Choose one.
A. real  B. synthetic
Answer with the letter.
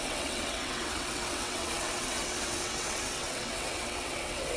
B